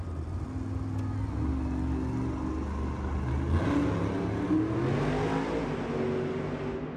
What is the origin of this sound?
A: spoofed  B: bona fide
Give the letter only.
B